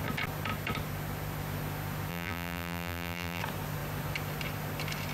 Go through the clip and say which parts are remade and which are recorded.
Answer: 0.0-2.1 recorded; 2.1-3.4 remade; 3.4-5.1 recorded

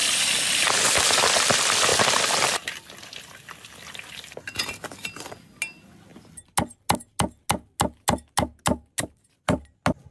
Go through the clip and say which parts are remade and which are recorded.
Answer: 0.0-10.1 recorded

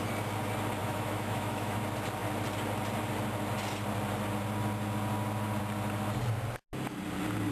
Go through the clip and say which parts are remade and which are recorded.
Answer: 0.0-0.8 recorded; 0.8-1.8 remade; 1.8-7.5 recorded

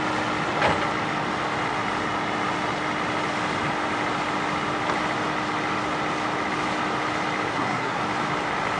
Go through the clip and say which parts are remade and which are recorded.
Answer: 0.0-7.5 recorded; 7.5-8.0 remade; 8.0-8.8 recorded

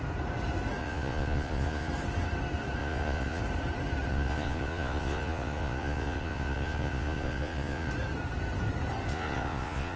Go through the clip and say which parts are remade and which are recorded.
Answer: 0.0-0.8 recorded; 0.8-1.9 remade; 1.9-2.8 recorded; 2.8-3.4 remade; 3.4-4.1 recorded; 4.1-7.9 remade; 7.9-9.1 recorded; 9.1-10.0 remade

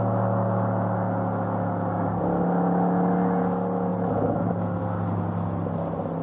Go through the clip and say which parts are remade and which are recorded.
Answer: 0.0-3.9 recorded; 3.9-4.5 remade; 4.5-6.2 recorded